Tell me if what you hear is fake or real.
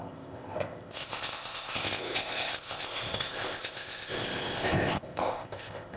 fake